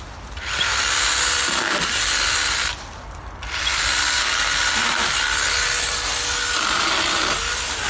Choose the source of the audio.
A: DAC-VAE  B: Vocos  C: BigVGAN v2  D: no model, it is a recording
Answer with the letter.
D